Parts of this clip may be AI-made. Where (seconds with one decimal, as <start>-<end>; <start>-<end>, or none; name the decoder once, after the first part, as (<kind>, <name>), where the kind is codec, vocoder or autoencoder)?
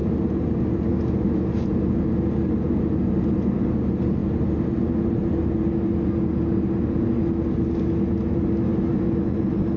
none